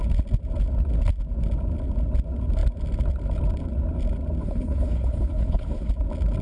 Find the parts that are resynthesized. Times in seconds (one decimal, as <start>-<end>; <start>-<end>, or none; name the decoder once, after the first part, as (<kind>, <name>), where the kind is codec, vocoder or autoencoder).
4.4-5.9 (codec, HILCodec)